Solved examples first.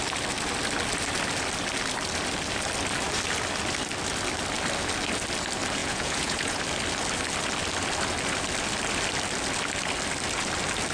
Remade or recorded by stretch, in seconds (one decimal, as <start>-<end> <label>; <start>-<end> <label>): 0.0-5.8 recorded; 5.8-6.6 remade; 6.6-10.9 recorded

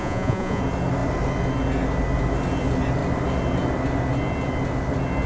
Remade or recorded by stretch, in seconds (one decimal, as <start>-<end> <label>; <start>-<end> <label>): 0.0-0.6 remade; 0.6-5.3 recorded

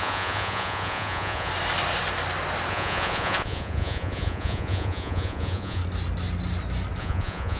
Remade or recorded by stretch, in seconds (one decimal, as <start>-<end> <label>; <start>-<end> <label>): 0.0-1.5 remade; 1.5-2.7 recorded; 2.7-5.8 remade; 5.8-7.0 recorded; 7.0-7.6 remade

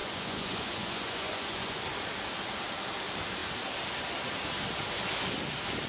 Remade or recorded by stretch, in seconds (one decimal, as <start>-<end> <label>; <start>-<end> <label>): 0.0-1.8 remade; 1.8-5.9 recorded

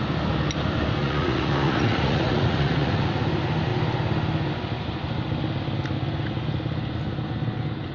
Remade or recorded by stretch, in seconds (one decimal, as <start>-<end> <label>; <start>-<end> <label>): 0.0-1.0 recorded; 1.0-3.1 remade; 3.1-7.9 recorded